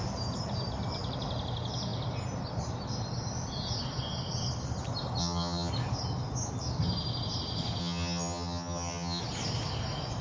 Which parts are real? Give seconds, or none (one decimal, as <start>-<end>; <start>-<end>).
0.0-5.2; 5.7-7.8; 9.2-10.2